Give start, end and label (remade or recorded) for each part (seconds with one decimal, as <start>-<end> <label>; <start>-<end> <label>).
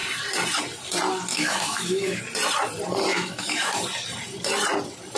0.0-1.3 recorded; 1.3-2.2 remade; 2.2-3.1 recorded; 3.1-3.8 remade; 3.8-5.2 recorded